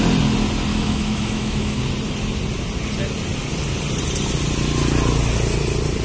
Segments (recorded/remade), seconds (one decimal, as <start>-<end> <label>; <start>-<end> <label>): 0.0-0.7 recorded; 0.7-1.8 remade; 1.8-6.0 recorded